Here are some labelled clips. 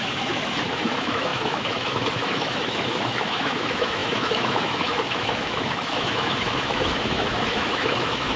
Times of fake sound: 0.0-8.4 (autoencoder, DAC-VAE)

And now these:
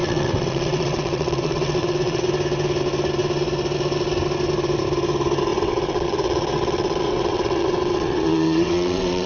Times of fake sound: 0.0-2.3 (vocoder, WaveNeXt); 5.5-9.3

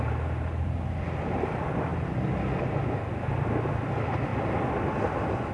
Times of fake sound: none

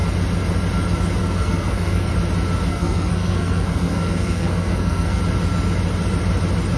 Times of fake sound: 1.2-2.1 (codec, SNAC); 2.7-5.2

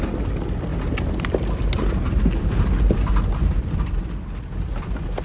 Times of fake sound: none